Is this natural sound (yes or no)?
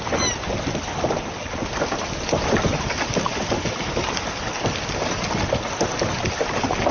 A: yes